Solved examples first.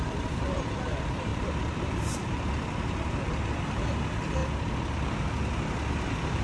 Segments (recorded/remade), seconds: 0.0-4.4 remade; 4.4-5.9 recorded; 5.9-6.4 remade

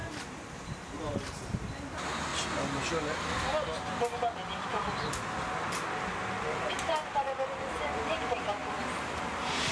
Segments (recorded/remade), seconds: 0.0-2.3 remade; 2.3-6.7 recorded; 6.7-8.6 remade; 8.6-9.7 recorded

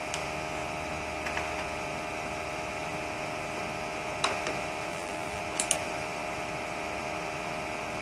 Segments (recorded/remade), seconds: 0.0-4.9 recorded; 4.9-5.4 remade; 5.4-8.0 recorded

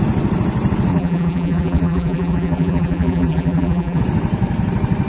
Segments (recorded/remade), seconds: 0.0-0.9 recorded; 0.9-4.0 remade; 4.0-5.1 recorded

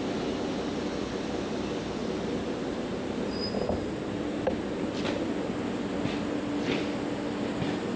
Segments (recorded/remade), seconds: 0.0-2.0 recorded; 2.0-5.4 remade; 5.4-8.0 recorded

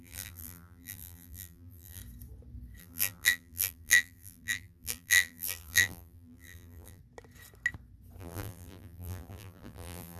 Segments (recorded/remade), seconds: 0.0-2.0 remade; 2.0-2.8 recorded; 2.8-7.0 remade; 7.0-8.2 recorded; 8.2-10.2 remade

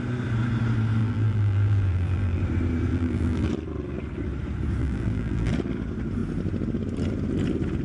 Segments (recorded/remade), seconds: 0.0-1.0 recorded; 1.0-2.4 remade; 2.4-2.9 recorded; 2.9-3.5 remade; 3.5-4.8 recorded; 4.8-5.5 remade; 5.5-7.8 recorded